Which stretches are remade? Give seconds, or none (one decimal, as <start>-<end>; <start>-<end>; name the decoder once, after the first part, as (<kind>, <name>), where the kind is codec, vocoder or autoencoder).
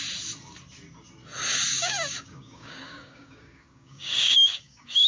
1.7-5.1 (codec, DAC)